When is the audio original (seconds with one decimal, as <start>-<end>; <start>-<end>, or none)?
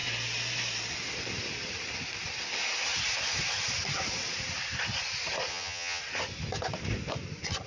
0.0-5.5; 6.0-7.7